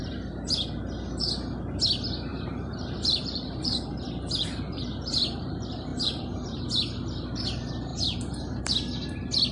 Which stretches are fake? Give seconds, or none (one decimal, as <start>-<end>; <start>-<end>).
2.3-5.5; 5.9-6.6; 7.9-8.6